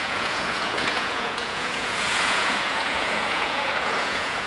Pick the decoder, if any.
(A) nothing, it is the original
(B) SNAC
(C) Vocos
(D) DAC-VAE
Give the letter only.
C